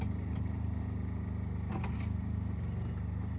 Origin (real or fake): real